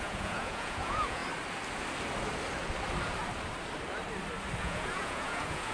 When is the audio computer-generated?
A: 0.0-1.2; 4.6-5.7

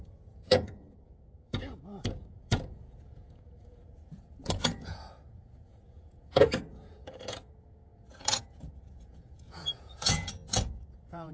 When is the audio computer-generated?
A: 0.0-11.3

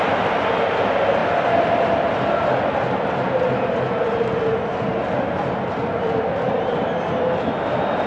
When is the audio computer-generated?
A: none

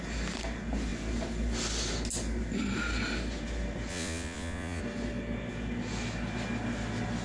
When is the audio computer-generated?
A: 3.9-4.8

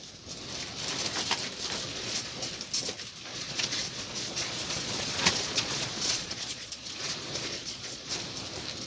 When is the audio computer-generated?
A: 1.9-2.5; 3.3-8.1

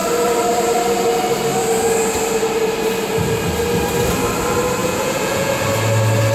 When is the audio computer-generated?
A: 4.8-5.6

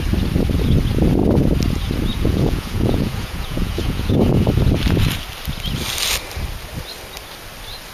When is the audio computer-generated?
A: 2.1-4.5

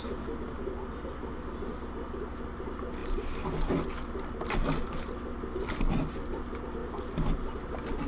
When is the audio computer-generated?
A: none